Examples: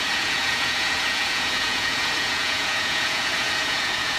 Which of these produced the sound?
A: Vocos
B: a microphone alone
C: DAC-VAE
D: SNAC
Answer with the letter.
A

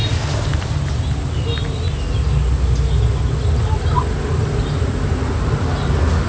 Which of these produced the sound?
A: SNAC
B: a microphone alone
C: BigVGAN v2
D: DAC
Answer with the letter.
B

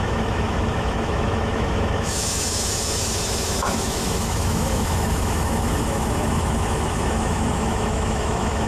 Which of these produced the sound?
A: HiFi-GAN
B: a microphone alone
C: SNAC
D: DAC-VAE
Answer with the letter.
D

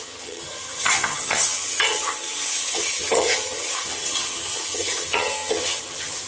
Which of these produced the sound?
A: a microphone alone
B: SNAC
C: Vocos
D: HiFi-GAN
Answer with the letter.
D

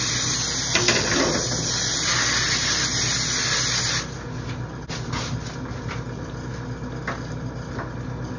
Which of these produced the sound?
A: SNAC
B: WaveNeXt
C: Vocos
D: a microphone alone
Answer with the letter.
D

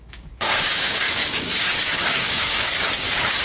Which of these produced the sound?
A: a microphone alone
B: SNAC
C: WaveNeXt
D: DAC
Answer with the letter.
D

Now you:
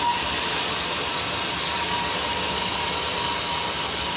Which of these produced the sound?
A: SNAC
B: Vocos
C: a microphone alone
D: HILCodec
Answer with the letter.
C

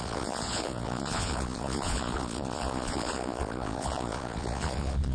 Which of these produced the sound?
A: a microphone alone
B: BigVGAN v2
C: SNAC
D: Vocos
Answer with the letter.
D